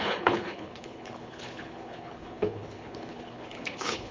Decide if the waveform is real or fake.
fake